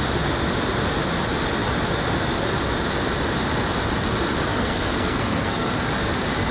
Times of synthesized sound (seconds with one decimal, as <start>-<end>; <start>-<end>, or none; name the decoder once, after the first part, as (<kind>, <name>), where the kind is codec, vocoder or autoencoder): 4.5-5.7 (codec, SNAC)